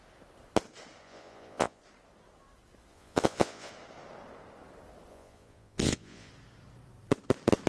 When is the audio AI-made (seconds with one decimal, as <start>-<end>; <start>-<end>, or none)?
1.0-1.8; 2.9-3.7; 5.1-6.3